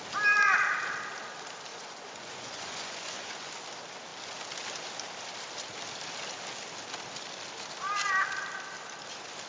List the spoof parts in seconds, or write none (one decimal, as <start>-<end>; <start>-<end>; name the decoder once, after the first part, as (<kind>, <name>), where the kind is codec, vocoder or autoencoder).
1.7-3.5 (vocoder, Vocos)